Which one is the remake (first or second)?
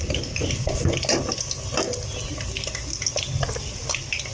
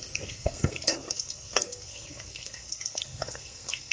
second